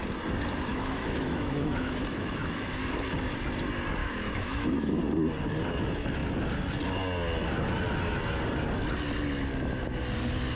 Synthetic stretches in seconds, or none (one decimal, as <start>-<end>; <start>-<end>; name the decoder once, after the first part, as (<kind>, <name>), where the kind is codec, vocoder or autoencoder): 0.7-3.1 (autoencoder, DAC-VAE); 4.0-5.0